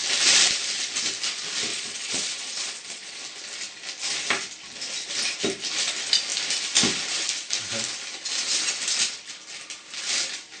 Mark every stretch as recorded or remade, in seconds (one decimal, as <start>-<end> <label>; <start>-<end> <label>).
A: 0.0-1.7 recorded; 1.7-3.2 remade; 3.2-10.6 recorded